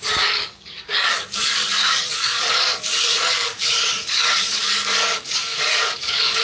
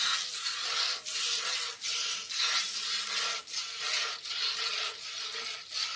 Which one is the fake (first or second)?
first